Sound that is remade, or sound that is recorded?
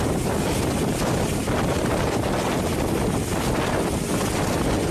recorded